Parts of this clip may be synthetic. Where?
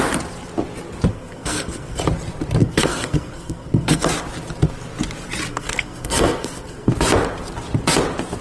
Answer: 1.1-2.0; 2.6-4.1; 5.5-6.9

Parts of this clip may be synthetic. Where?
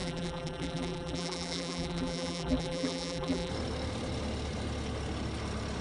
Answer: 0.0-3.5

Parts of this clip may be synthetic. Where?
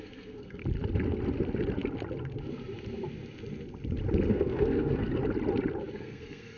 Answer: 0.0-0.6; 4.3-5.1; 6.0-6.6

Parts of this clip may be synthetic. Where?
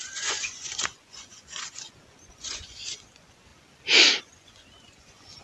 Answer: 0.0-3.5; 4.2-5.4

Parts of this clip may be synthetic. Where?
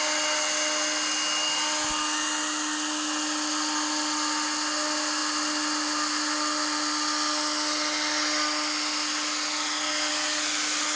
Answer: none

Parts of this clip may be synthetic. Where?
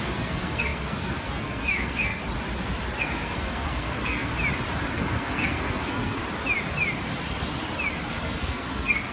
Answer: 0.0-2.2; 3.0-4.3; 4.9-6.2; 8.1-9.1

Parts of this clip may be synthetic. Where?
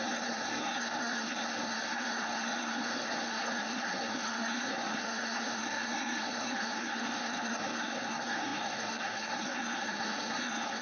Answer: 0.0-10.8